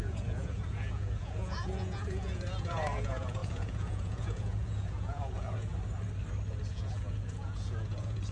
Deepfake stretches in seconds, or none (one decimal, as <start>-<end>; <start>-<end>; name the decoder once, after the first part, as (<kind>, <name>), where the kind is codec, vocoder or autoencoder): 0.0-5.7 (vocoder, Vocos); 6.7-8.3